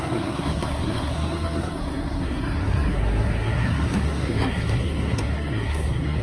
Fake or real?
fake